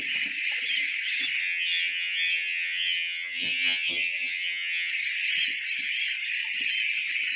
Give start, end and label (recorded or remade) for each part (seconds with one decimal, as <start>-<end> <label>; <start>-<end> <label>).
0.0-1.4 recorded; 1.4-4.9 remade; 4.9-7.4 recorded